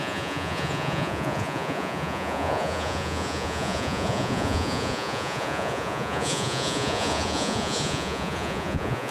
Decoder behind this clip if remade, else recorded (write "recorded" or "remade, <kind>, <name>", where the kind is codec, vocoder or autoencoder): remade, vocoder, Vocos